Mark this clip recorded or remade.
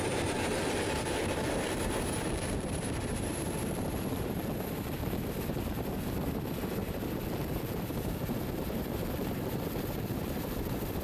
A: remade